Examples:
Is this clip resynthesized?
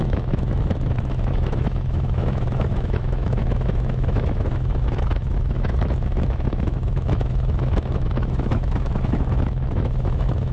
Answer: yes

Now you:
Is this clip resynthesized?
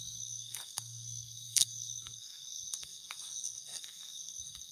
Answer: yes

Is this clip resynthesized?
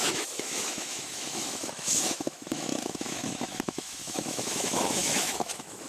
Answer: yes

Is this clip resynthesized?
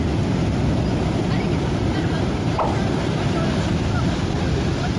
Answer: no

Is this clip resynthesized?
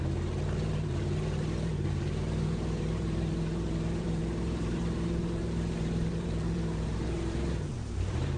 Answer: yes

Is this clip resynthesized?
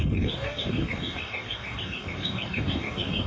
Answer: yes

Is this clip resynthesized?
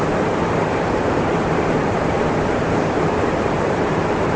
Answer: yes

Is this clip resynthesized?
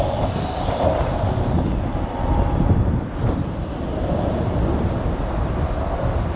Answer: no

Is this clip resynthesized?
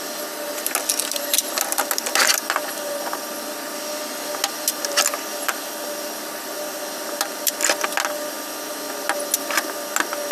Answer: no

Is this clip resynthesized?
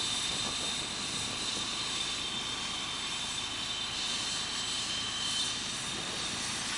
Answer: no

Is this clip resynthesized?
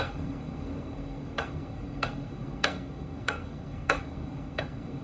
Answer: yes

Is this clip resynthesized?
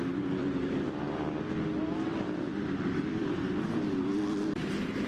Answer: no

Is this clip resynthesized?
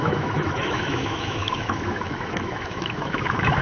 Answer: yes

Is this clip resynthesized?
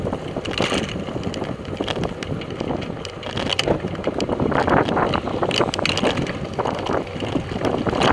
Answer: no